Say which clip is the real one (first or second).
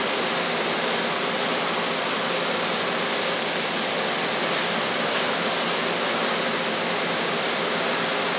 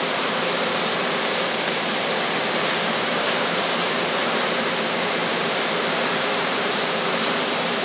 first